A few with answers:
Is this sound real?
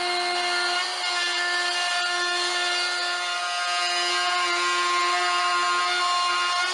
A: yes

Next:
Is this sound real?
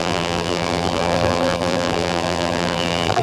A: no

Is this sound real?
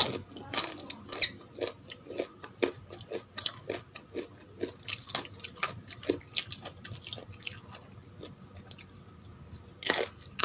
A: yes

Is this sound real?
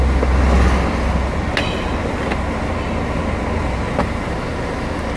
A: yes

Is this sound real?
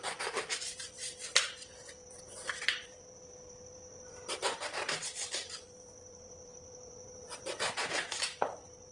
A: no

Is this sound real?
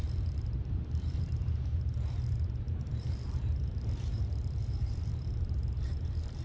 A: no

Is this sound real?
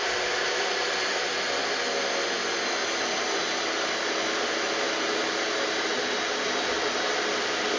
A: yes